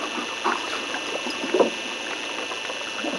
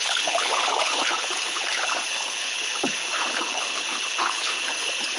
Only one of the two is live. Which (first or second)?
first